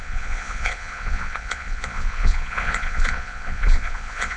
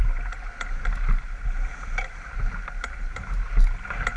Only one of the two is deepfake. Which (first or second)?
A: first